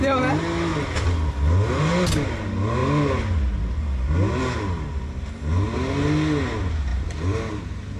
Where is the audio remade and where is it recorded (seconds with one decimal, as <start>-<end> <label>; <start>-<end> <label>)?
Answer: 0.0-6.9 recorded; 6.9-7.6 remade; 7.6-8.0 recorded

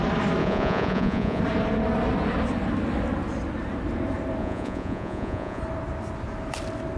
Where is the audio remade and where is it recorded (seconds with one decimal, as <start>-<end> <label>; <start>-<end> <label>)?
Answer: 0.0-0.4 recorded; 0.4-1.4 remade; 1.4-4.4 recorded; 4.4-5.6 remade; 5.6-7.0 recorded

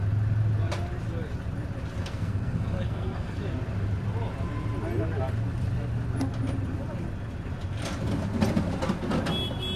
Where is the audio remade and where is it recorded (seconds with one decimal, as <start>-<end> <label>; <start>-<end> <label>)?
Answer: 0.0-2.0 recorded; 2.0-3.4 remade; 3.4-9.8 recorded

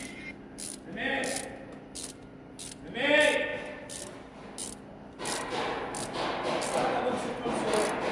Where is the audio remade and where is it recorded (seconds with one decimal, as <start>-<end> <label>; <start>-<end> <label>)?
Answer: 0.0-8.1 recorded

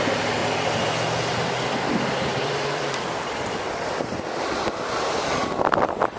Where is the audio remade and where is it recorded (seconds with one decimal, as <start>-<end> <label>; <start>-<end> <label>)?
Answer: 0.0-0.4 recorded; 0.4-1.9 remade; 1.9-2.3 recorded; 2.3-6.2 remade

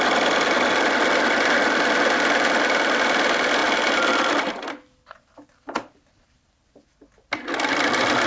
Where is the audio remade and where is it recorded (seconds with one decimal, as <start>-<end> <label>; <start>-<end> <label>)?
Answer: 0.0-8.3 recorded